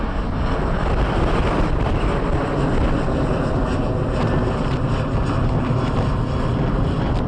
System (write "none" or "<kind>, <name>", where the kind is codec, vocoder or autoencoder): none